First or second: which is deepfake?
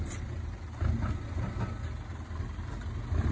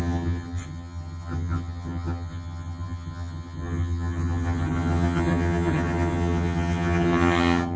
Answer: second